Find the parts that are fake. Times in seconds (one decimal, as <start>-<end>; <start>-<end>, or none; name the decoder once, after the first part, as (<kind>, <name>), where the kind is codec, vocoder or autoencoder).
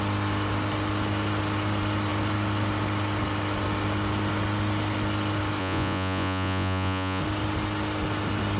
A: 5.6-7.2 (vocoder, Vocos)